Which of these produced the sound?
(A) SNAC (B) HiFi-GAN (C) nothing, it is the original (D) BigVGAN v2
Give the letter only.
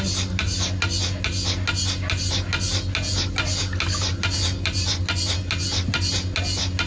C